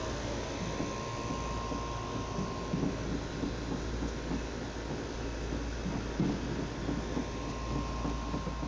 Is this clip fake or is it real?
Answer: real